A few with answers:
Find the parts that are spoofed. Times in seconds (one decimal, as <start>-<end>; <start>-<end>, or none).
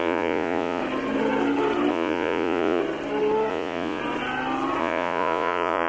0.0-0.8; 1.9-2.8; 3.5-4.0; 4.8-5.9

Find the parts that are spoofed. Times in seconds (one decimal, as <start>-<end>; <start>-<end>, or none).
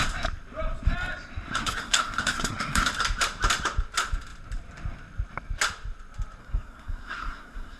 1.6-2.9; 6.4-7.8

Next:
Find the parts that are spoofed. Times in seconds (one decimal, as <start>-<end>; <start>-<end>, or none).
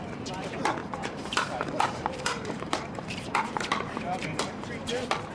0.8-3.5; 4.2-4.8